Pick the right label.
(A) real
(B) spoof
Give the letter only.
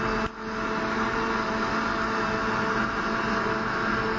A